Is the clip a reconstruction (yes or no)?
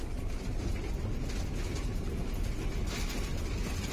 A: no